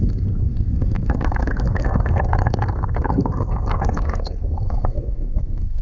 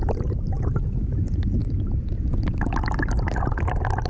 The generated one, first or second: first